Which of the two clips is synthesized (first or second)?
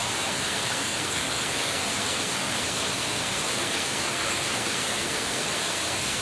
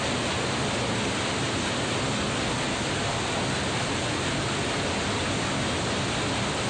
first